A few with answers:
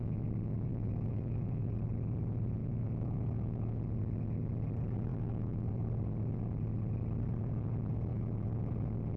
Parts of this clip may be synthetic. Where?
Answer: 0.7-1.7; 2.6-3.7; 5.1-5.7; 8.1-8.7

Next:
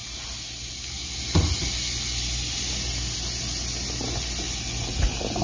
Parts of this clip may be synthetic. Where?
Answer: none